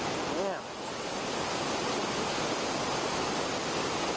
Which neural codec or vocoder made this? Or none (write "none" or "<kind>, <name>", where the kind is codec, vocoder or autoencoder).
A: none